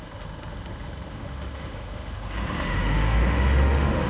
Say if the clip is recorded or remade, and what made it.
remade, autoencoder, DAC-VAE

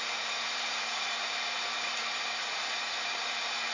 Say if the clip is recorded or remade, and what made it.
remade, vocoder, BigVGAN v2